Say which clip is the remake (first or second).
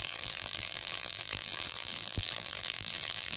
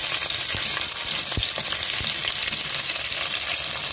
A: first